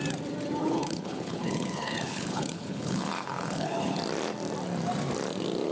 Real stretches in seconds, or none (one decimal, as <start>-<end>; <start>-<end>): 0.0-0.6; 4.0-5.7